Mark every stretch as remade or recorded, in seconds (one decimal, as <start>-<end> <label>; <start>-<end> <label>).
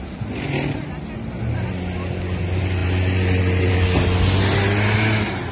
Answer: 0.0-5.5 recorded